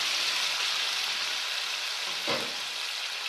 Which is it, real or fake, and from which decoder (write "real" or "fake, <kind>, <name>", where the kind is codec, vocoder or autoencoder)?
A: real